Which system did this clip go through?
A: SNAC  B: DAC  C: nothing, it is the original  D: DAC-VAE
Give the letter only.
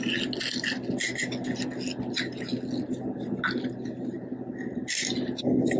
C